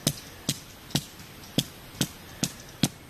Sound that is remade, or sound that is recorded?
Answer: recorded